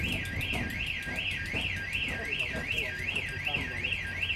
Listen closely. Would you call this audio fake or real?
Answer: real